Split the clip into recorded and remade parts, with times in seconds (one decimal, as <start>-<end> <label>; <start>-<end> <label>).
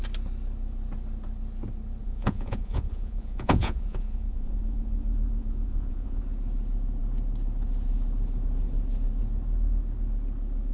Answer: 0.0-2.0 recorded; 2.0-6.2 remade; 6.2-10.7 recorded